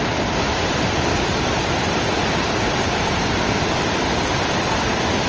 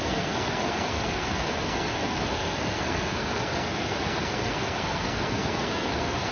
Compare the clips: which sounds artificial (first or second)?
second